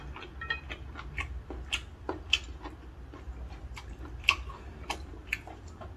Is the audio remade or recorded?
recorded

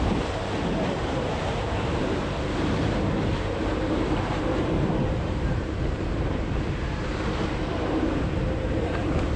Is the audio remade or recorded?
remade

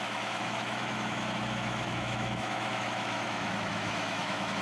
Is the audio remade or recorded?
remade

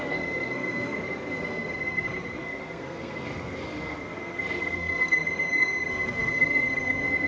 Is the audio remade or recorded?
remade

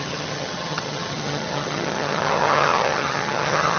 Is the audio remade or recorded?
remade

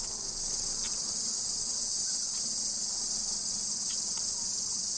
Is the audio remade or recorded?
recorded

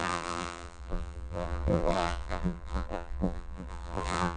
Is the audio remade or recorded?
remade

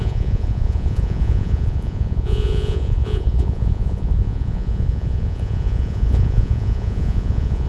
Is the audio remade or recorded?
remade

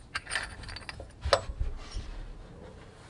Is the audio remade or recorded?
recorded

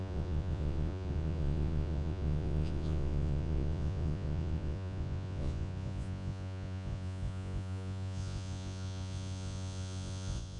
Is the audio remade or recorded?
remade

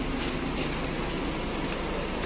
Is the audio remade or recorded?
recorded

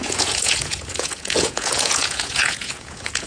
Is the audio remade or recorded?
remade